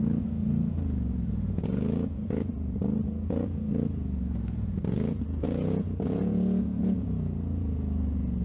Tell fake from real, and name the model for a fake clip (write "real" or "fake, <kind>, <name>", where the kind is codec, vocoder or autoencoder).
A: fake, vocoder, Vocos